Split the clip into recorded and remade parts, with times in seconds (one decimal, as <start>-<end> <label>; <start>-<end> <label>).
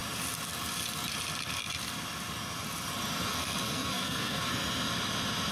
0.0-3.3 recorded; 3.3-4.5 remade; 4.5-5.5 recorded